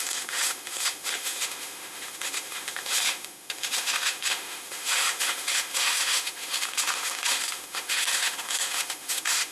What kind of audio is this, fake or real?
fake